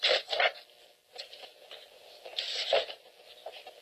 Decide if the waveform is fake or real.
fake